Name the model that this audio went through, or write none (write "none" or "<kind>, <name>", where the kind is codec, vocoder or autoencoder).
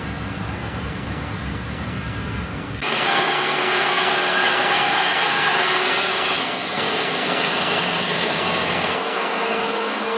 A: codec, SNAC